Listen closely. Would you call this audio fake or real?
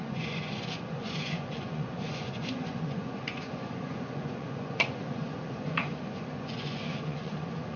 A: fake